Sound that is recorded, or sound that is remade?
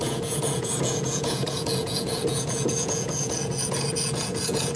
remade